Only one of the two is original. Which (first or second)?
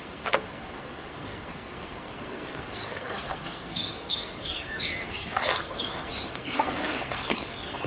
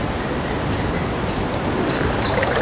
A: second